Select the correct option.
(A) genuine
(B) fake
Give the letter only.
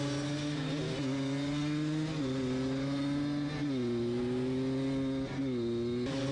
A